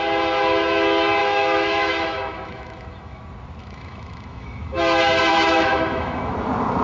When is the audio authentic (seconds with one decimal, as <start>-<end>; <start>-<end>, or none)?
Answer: 0.0-1.2; 3.2-3.6; 4.8-5.3; 6.3-6.8